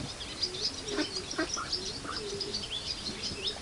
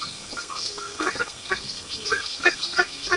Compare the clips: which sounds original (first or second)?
first